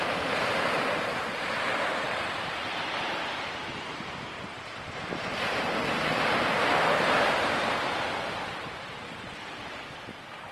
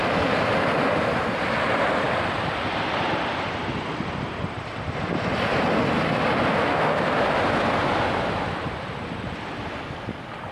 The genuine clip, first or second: second